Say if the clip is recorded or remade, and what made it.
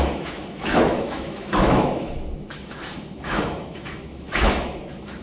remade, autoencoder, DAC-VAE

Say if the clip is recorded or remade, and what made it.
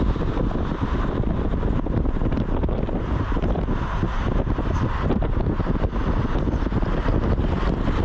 recorded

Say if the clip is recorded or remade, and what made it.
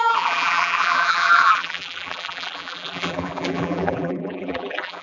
remade, vocoder, BigVGAN v2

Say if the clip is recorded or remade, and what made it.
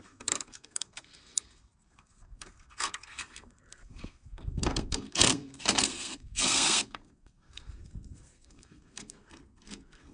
remade, codec, SNAC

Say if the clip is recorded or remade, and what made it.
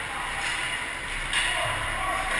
recorded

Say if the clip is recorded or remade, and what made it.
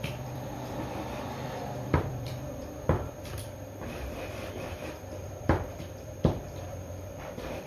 remade, vocoder, BigVGAN v2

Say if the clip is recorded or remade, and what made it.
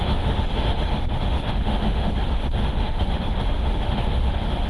remade, autoencoder, DAC-VAE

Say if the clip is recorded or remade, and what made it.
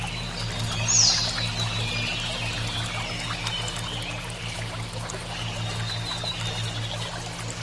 recorded